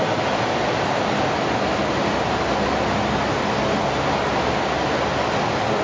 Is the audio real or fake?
real